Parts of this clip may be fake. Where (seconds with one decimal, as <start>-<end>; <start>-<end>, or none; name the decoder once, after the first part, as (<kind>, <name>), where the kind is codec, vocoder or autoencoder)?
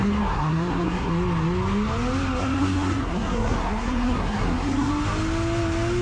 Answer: 0.0-1.1 (codec, SNAC); 2.4-4.9